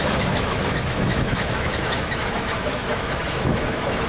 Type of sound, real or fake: fake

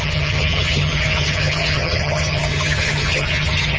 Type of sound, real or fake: fake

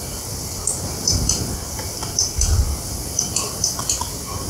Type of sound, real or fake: real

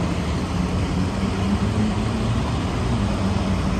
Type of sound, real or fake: real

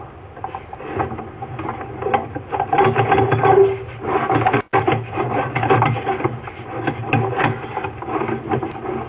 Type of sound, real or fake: real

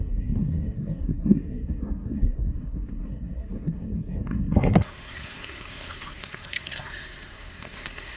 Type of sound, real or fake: fake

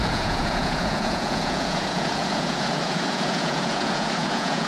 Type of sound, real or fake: fake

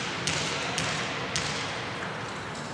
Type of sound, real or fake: real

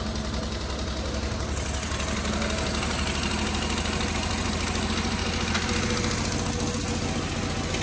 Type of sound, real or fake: real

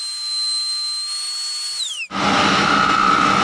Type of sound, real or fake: real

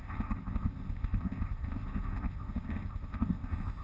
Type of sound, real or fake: fake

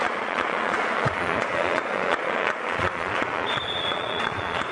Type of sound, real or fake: fake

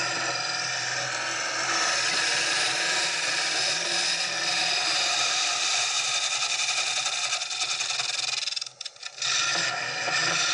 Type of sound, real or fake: fake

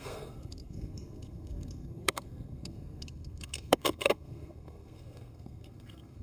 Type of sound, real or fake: fake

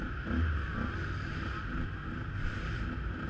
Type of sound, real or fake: real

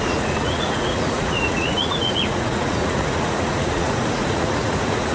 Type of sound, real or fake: fake